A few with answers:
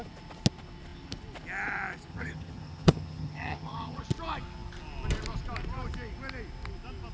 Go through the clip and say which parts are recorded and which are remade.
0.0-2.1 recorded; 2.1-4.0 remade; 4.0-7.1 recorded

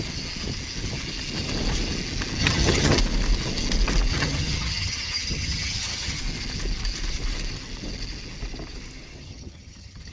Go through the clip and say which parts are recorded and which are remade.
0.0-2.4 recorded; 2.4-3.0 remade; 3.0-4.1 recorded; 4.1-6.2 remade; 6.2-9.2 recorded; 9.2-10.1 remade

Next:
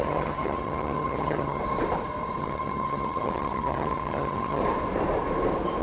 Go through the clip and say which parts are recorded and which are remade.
0.0-1.6 remade; 1.6-2.4 recorded; 2.4-4.6 remade; 4.6-5.8 recorded

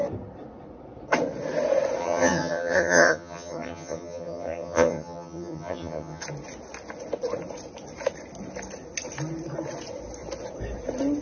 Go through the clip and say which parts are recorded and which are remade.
0.0-2.0 recorded; 2.0-6.2 remade; 6.2-11.2 recorded